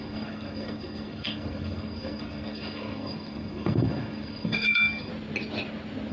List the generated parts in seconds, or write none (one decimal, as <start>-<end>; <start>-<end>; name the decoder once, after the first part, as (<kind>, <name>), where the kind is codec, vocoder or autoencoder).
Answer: 0.0-5.1 (codec, SNAC)